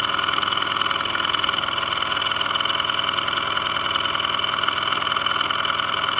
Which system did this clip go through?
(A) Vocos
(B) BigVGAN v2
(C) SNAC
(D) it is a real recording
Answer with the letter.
D